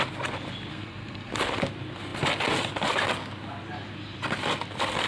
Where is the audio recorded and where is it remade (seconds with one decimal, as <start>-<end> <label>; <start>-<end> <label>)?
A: 0.0-0.7 recorded; 0.7-1.3 remade; 1.3-5.1 recorded